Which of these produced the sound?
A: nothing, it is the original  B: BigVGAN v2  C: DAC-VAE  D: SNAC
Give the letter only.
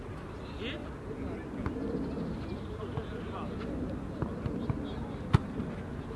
A